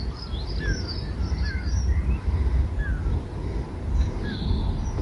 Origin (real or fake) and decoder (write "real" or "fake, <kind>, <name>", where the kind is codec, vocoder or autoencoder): real